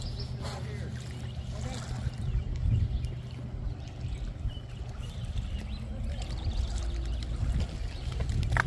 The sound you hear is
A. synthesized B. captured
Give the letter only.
B